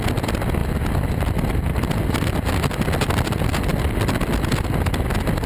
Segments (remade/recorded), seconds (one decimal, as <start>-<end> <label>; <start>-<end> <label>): 0.0-5.5 recorded